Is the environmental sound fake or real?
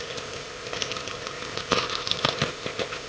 fake